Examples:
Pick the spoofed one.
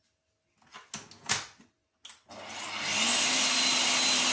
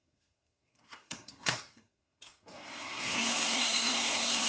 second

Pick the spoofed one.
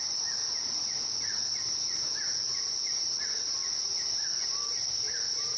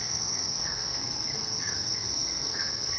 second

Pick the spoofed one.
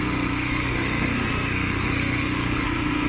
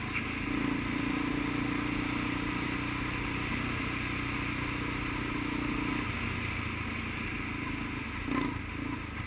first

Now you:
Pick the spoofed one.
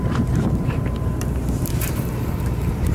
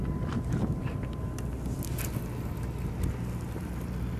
first